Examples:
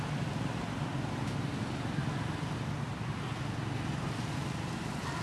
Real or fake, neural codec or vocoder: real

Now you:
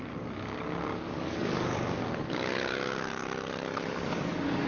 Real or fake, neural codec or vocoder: fake, codec, DAC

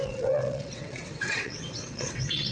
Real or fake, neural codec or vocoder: fake, vocoder, WaveNeXt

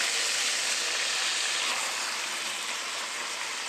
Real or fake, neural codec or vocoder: real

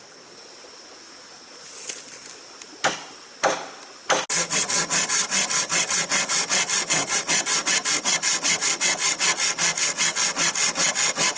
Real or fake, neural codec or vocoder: real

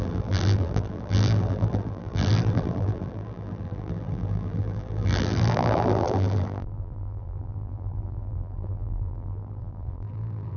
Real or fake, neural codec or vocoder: fake, vocoder, BigVGAN v2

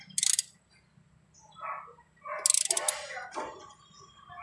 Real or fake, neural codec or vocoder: real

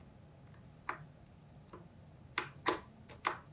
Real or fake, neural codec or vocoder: real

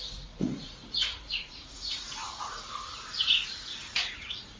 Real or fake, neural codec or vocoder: fake, vocoder, Vocos